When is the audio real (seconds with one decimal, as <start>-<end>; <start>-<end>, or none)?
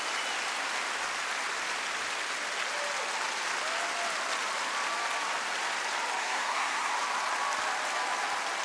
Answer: 0.0-6.2; 6.9-8.6